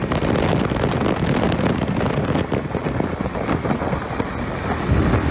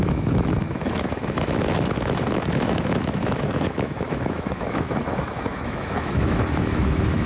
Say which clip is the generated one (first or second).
second